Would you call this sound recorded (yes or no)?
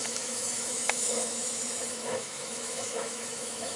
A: no